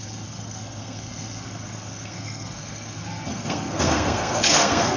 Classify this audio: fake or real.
fake